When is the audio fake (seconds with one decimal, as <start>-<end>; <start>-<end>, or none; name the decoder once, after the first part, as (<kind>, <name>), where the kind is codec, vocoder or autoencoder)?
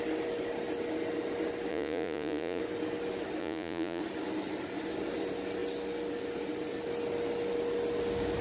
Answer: 1.7-2.6 (vocoder, Vocos); 3.4-4.0